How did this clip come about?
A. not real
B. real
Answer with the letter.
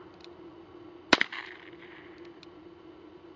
B